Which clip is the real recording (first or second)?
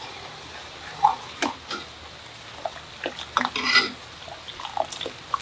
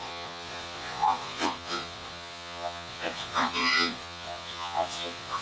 first